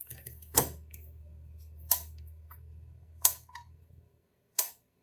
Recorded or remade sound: remade